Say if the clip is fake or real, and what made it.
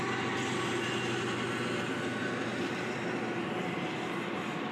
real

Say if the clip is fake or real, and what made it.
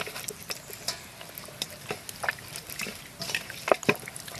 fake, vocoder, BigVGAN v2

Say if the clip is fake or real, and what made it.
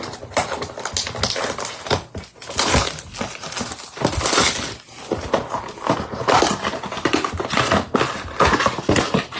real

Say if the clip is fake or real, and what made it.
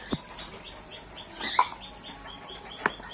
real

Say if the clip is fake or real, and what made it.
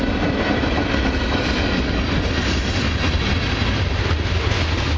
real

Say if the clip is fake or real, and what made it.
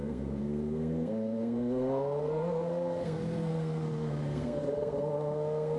fake, codec, SNAC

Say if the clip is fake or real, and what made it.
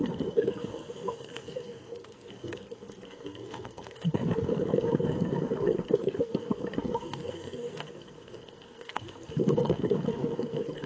fake, codec, SNAC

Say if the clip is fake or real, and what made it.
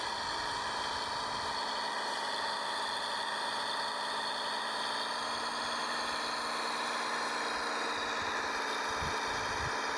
real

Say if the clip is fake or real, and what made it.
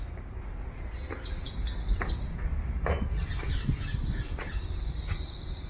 real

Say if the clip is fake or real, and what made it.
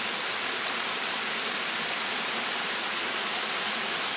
real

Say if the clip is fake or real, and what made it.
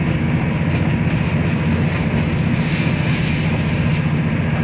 real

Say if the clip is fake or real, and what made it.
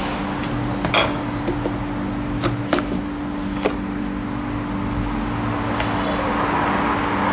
real